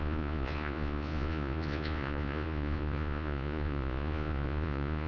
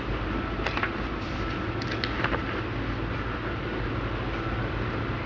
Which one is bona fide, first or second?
second